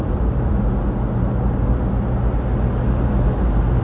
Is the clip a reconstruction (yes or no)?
no